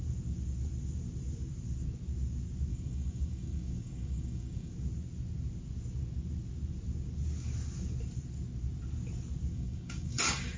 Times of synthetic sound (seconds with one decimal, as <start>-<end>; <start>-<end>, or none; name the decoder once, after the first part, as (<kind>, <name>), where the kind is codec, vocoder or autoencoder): 2.7-4.7 (codec, DAC); 9.5-10.6